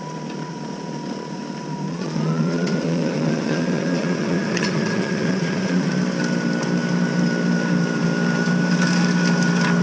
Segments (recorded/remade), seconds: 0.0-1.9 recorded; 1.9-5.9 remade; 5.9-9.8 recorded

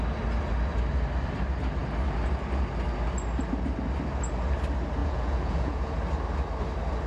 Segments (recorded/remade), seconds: 0.0-5.0 recorded; 5.0-5.9 remade; 5.9-7.1 recorded

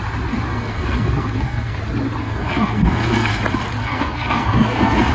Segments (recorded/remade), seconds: 0.0-0.5 recorded; 0.5-1.8 remade; 1.8-2.2 recorded; 2.2-3.4 remade; 3.4-3.8 recorded; 3.8-5.1 remade

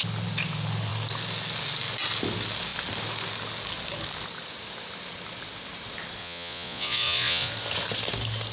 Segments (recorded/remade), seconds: 0.0-6.2 recorded; 6.2-7.5 remade; 7.5-8.5 recorded

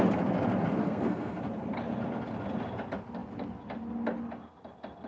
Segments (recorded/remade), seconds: 0.0-0.8 recorded; 0.8-1.4 remade; 1.4-5.1 recorded

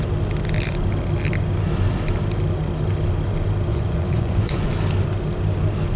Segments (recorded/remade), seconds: 0.0-3.7 recorded; 3.7-4.7 remade; 4.7-6.0 recorded

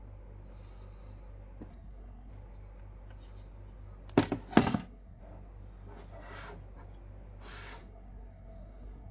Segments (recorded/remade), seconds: 0.0-1.7 recorded; 1.7-2.3 remade; 2.3-4.6 recorded; 4.6-5.2 remade; 5.2-7.8 recorded; 7.8-9.1 remade

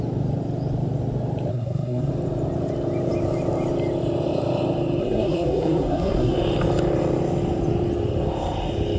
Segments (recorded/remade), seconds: 0.0-1.5 recorded; 1.5-2.1 remade; 2.1-5.0 recorded; 5.0-6.4 remade; 6.4-9.0 recorded